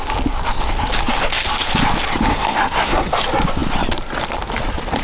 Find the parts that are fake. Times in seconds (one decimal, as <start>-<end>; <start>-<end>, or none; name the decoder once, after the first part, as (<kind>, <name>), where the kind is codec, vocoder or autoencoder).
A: 2.3-3.1 (codec, SNAC)